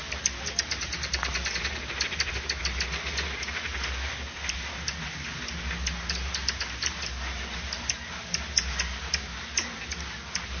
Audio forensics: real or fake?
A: real